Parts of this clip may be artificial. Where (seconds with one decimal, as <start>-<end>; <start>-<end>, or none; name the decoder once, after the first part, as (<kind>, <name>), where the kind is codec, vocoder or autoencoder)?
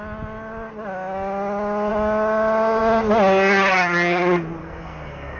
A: 4.6-5.4 (codec, SNAC)